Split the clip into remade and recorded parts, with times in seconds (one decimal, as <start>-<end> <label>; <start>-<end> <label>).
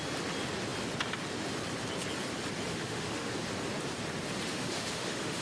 0.0-2.7 recorded; 2.7-3.3 remade; 3.3-4.5 recorded; 4.5-5.4 remade